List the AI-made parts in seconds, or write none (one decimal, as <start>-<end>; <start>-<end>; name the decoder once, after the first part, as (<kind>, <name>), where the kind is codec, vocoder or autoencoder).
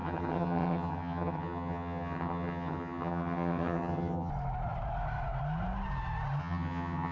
0.0-4.3 (vocoder, HiFi-GAN); 6.4-7.1